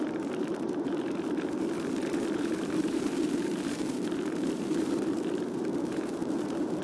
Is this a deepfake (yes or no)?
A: yes